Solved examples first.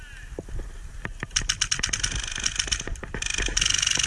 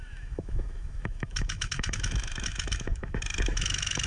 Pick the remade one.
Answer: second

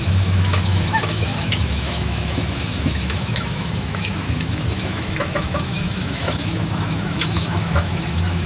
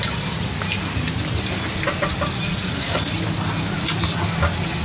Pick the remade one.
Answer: first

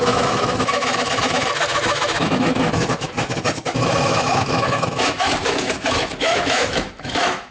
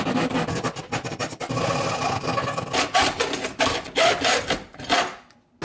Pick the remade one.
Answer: first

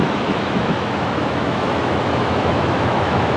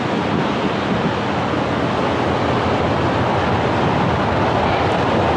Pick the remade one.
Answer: first